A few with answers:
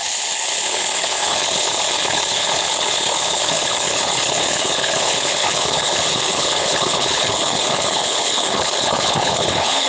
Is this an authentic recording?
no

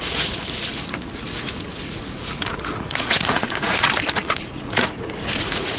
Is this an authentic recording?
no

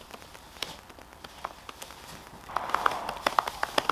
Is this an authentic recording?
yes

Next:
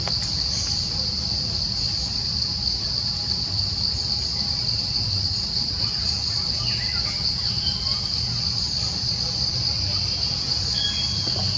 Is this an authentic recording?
yes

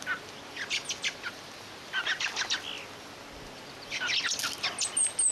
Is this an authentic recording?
yes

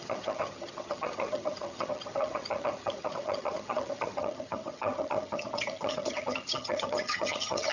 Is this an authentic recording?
no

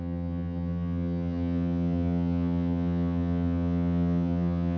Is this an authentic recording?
no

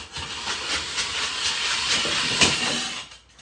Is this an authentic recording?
yes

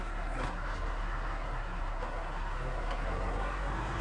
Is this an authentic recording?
no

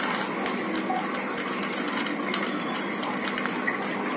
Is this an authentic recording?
yes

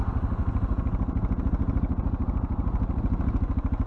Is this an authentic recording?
yes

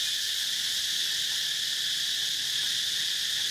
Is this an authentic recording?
yes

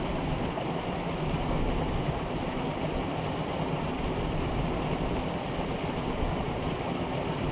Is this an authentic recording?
yes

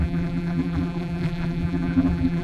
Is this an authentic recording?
no